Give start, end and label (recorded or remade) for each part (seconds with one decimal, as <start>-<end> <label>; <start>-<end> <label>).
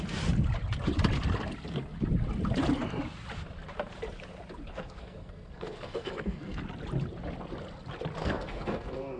0.0-4.7 recorded; 4.7-6.6 remade; 6.6-8.2 recorded; 8.2-9.2 remade